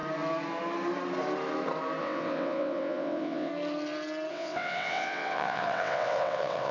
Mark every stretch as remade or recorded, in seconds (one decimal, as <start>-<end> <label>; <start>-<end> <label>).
0.0-2.0 recorded; 2.0-3.5 remade; 3.5-4.3 recorded; 4.3-6.7 remade